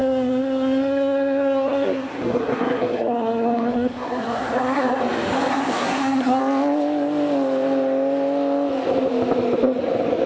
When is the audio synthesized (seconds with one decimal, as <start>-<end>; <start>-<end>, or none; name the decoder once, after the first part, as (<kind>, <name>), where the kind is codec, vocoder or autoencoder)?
0.0-5.0 (codec, SNAC); 5.5-6.4